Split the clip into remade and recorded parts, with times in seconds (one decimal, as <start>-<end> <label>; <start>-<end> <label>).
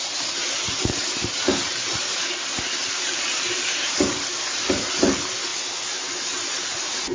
0.0-0.4 recorded; 0.4-1.7 remade; 1.7-2.8 recorded; 2.8-4.1 remade; 4.1-7.1 recorded